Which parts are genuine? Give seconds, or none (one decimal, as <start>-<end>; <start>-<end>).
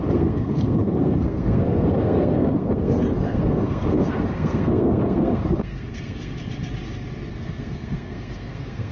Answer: 6.3-7.3